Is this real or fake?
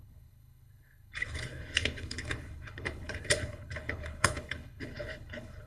fake